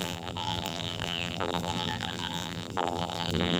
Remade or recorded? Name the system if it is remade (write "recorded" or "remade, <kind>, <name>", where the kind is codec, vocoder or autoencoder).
remade, vocoder, BigVGAN v2